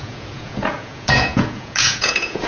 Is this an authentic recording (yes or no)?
no